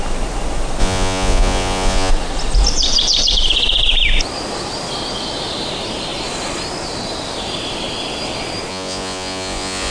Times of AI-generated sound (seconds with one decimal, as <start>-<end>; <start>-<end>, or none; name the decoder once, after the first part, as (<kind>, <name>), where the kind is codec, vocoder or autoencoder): 0.8-2.1 (vocoder, Vocos); 8.7-9.9